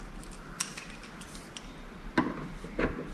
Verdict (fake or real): real